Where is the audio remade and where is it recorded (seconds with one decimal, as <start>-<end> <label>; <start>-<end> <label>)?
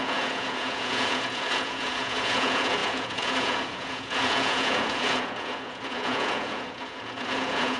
0.0-7.8 remade